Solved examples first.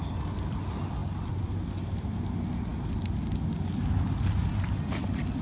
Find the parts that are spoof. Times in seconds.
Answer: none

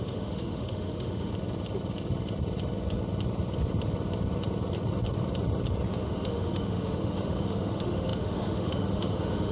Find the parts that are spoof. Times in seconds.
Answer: 0.0-1.3 (autoencoder, DAC-VAE); 5.9-9.5

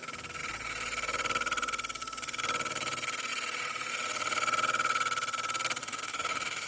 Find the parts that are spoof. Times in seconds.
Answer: 5.8-6.7 (autoencoder, DAC-VAE)

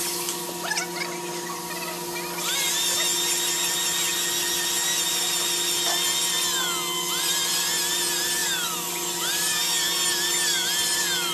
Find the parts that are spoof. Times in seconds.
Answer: none

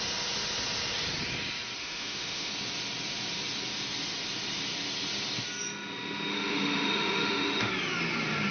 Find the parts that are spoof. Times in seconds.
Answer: 1.8-2.5 (autoencoder, DAC-VAE); 6.3-7.7

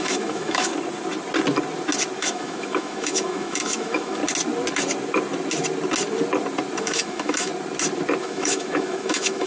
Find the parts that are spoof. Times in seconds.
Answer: 0.0-0.7 (autoencoder, DAC-VAE); 2.2-4.2; 6.8-7.5; 8.2-9.5